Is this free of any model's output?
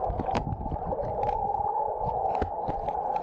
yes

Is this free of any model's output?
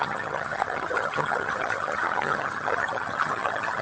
no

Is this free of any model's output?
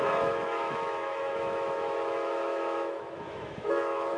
no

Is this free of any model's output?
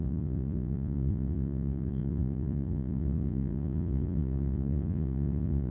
no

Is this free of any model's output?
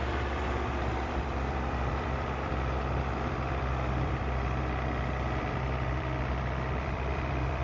no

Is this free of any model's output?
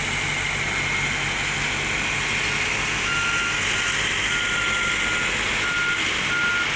yes